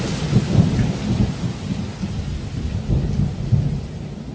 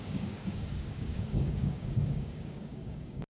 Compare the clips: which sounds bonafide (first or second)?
first